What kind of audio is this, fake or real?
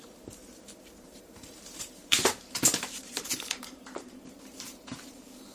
fake